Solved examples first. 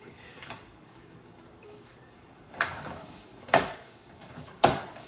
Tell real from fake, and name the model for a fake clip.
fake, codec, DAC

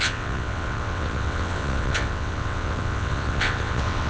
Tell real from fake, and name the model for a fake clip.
fake, vocoder, WaveNeXt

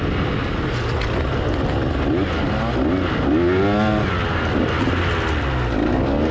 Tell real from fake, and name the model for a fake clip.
real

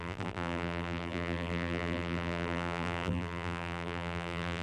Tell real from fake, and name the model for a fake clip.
fake, vocoder, BigVGAN v2